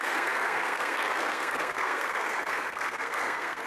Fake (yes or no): yes